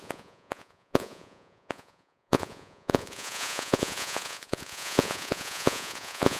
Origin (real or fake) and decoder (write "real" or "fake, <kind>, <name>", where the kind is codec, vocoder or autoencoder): fake, vocoder, Vocos